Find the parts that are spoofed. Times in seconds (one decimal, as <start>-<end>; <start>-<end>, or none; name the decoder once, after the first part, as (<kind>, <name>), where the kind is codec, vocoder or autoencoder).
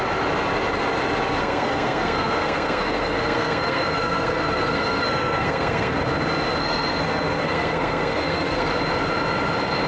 1.4-6.0 (codec, SNAC); 6.6-8.7